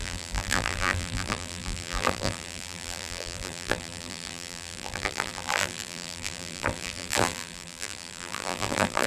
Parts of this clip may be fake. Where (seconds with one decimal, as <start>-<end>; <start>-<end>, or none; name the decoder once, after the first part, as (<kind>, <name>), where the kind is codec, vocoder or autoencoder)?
0.0-9.1 (vocoder, BigVGAN v2)